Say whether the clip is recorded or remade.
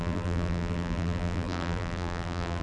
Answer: remade